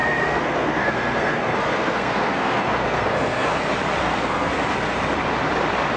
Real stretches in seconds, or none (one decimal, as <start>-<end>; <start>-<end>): 3.6-4.0; 4.5-6.0